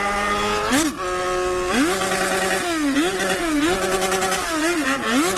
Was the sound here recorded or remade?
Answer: recorded